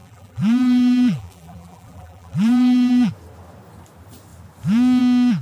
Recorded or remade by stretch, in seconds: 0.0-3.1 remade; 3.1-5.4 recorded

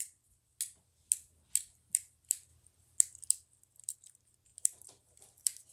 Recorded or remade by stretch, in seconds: 0.0-0.5 remade; 0.5-1.9 recorded; 1.9-2.5 remade; 2.5-3.3 recorded; 3.3-5.7 remade

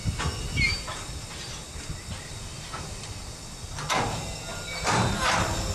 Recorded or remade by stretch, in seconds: 0.0-1.6 recorded; 1.6-2.9 remade; 2.9-4.5 recorded; 4.5-5.2 remade; 5.2-5.7 recorded

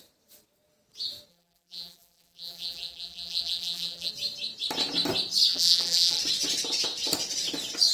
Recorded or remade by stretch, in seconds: 0.0-1.3 recorded; 1.3-4.1 remade; 4.1-5.5 recorded; 5.5-6.2 remade; 6.2-7.9 recorded

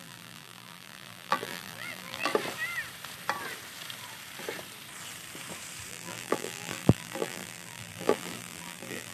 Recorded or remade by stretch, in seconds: 0.0-2.3 remade; 2.3-5.9 recorded; 5.9-9.1 remade

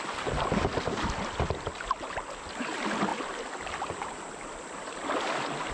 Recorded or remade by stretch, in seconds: 0.0-3.1 recorded; 3.1-5.2 remade; 5.2-5.7 recorded

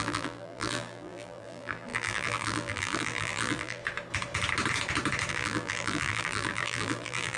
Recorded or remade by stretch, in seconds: 0.0-3.8 remade; 3.8-5.3 recorded; 5.3-7.4 remade